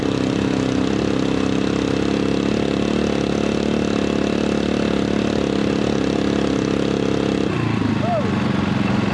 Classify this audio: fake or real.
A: real